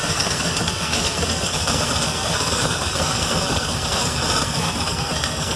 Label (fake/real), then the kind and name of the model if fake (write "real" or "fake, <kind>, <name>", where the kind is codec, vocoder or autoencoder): fake, codec, SNAC